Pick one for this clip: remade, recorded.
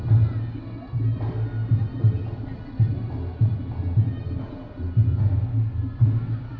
recorded